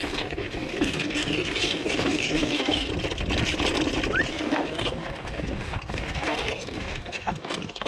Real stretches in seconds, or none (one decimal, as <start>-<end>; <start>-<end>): 2.9-4.3